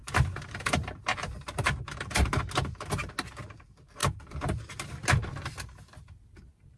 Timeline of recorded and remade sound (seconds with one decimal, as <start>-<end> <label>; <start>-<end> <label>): 0.0-2.4 remade; 2.4-4.0 recorded; 4.0-4.7 remade; 4.7-6.8 recorded